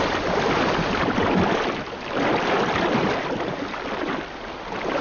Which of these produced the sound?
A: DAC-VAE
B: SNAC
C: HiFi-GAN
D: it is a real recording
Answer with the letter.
D